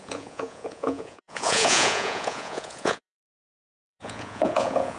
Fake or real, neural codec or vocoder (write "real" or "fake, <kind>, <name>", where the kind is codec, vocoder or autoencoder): fake, vocoder, Vocos